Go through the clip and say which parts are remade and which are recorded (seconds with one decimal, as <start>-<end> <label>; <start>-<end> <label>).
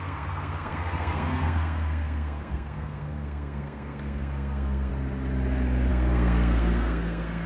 0.0-4.9 remade; 4.9-5.9 recorded; 5.9-7.5 remade